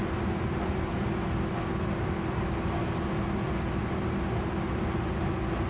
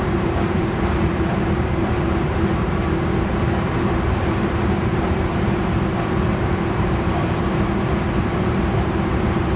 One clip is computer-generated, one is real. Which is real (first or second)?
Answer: first